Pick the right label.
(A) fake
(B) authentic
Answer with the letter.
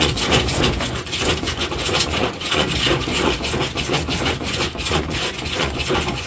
A